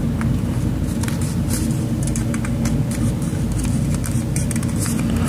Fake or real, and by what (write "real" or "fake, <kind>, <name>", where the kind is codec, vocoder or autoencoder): real